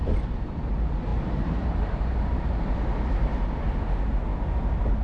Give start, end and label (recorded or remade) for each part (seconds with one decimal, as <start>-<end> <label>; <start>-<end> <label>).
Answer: 0.0-1.1 recorded; 1.1-3.5 remade; 3.5-5.0 recorded